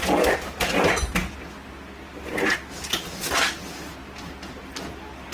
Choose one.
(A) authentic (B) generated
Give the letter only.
A